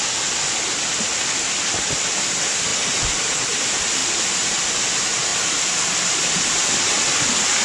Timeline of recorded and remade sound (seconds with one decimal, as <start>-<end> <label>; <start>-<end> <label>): 0.0-4.0 recorded; 4.0-4.7 remade; 4.7-5.3 recorded; 5.3-6.9 remade; 6.9-7.6 recorded